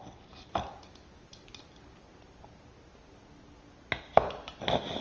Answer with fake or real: real